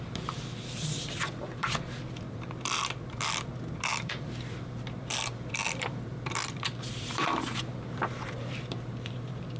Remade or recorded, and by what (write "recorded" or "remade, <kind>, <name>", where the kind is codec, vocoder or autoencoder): remade, vocoder, BigVGAN v2